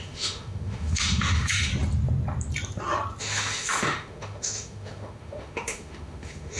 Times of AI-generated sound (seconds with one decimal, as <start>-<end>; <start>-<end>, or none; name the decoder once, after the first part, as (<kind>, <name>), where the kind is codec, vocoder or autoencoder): 0.0-1.7 (autoencoder, DAC-VAE); 3.2-6.6